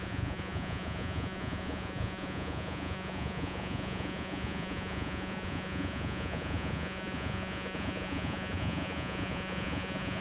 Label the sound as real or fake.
fake